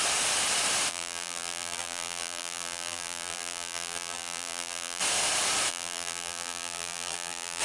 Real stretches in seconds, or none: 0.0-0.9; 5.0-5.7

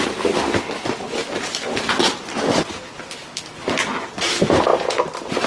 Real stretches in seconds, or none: 0.0-5.5

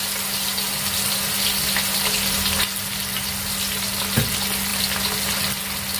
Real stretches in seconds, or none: 0.0-6.0

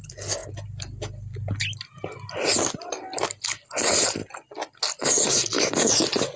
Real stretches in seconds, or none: 0.0-6.4

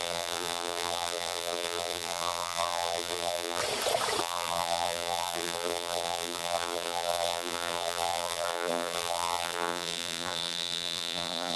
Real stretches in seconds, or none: 3.6-4.2